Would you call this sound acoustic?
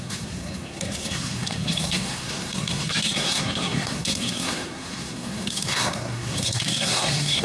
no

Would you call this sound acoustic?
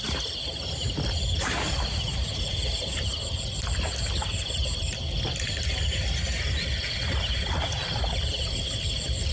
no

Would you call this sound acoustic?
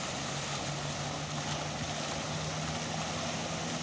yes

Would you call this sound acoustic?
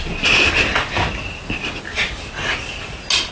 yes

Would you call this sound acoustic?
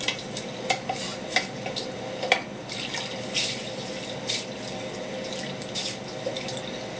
yes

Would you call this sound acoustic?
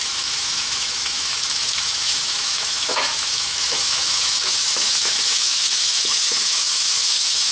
no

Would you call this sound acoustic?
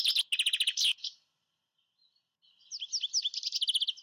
yes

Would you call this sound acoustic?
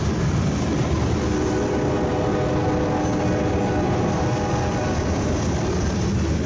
yes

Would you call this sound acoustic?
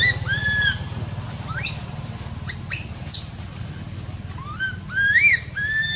yes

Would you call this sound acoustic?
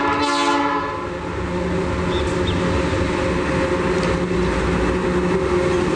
yes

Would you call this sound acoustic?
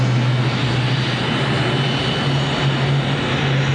yes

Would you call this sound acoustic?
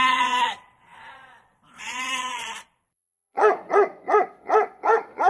no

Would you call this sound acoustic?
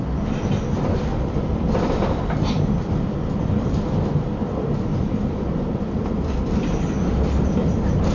yes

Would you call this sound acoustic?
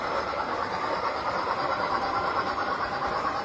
no